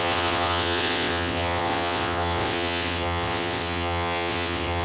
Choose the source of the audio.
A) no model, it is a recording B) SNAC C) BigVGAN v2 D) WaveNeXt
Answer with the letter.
D